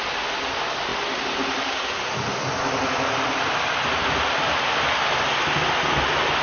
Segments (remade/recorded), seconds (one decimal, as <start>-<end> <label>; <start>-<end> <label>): 0.0-6.4 recorded